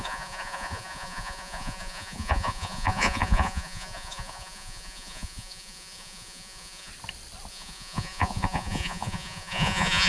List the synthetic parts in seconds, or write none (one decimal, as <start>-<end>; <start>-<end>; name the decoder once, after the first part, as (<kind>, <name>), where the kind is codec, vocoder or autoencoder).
0.0-6.9 (vocoder, Vocos); 7.5-10.1